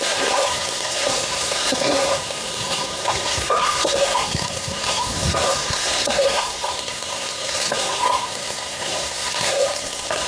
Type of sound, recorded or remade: remade